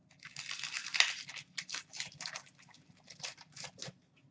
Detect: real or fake real